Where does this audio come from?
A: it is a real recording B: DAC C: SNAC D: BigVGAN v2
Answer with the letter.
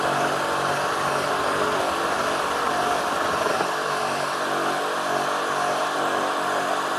A